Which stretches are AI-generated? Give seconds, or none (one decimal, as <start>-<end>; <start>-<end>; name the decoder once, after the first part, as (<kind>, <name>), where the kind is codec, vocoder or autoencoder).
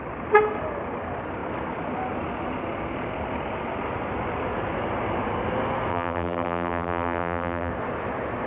5.9-7.7 (vocoder, BigVGAN v2)